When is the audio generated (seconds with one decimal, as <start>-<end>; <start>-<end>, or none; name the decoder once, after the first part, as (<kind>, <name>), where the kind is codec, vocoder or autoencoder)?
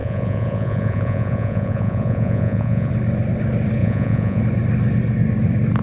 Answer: 0.0-2.9 (vocoder, Vocos); 3.8-4.4